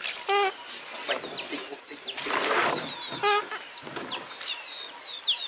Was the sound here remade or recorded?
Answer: recorded